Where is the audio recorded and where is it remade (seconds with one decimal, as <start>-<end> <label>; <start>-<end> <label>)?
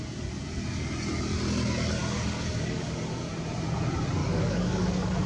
0.0-2.0 recorded; 2.0-3.0 remade; 3.0-4.2 recorded; 4.2-5.3 remade